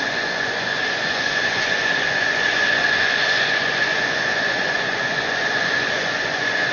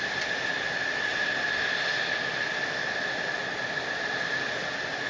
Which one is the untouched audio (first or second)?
second